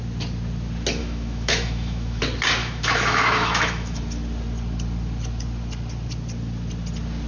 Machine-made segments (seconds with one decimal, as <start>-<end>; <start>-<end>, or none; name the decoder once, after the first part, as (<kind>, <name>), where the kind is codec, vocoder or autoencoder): 1.0-2.2 (autoencoder, DAC-VAE); 2.6-4.0